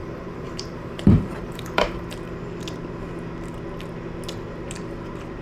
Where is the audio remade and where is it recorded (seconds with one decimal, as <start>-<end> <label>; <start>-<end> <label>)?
0.0-2.1 remade; 2.1-5.4 recorded

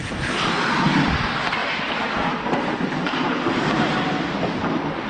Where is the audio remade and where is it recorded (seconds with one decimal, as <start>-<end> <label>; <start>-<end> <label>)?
0.0-5.1 recorded

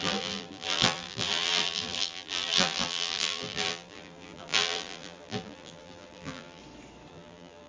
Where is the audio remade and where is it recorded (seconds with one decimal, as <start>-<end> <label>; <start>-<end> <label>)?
0.0-6.6 remade; 6.6-7.1 recorded; 7.1-7.7 remade

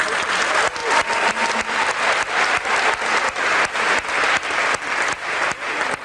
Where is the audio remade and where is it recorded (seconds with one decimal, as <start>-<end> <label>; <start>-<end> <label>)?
0.0-6.0 recorded

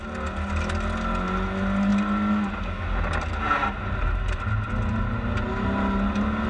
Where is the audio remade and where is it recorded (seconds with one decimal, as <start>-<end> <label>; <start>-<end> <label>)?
0.0-6.5 recorded

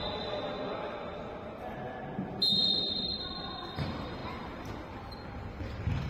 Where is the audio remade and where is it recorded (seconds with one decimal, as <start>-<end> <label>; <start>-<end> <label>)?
0.0-6.1 recorded

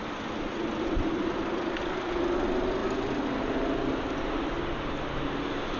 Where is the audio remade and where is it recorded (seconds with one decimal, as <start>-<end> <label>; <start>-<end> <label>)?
0.0-2.1 remade; 2.1-5.8 recorded

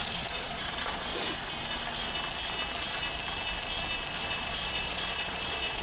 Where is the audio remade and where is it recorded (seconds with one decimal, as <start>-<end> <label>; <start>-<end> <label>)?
0.0-1.1 remade; 1.1-4.2 recorded; 4.2-5.8 remade